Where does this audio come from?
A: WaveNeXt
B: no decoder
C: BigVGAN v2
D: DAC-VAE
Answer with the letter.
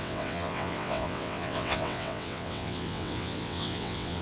A